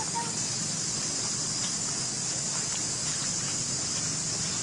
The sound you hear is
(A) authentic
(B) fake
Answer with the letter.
A